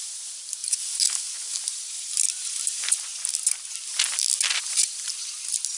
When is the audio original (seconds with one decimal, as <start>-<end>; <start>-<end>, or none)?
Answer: 0.0-5.8